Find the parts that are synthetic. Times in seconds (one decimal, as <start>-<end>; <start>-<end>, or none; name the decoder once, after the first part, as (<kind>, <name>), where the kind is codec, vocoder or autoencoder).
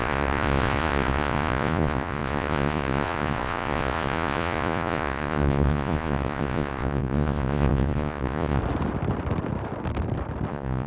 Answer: 0.0-8.6 (vocoder, Vocos); 10.5-10.9